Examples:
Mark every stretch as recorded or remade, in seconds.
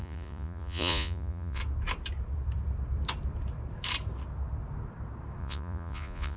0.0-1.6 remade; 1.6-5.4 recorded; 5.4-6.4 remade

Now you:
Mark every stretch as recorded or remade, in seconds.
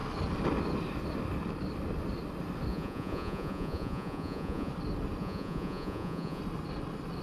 0.0-2.7 recorded; 2.7-4.7 remade; 4.7-5.2 recorded; 5.2-6.4 remade; 6.4-7.2 recorded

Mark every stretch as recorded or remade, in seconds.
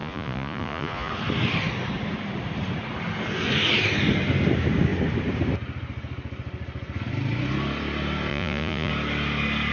0.0-1.1 remade; 1.1-8.3 recorded; 8.3-8.9 remade; 8.9-9.7 recorded